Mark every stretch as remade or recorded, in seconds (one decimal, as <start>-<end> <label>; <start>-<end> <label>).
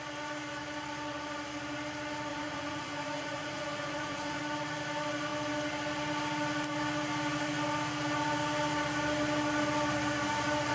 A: 0.0-2.3 recorded; 2.3-4.4 remade; 4.4-10.7 recorded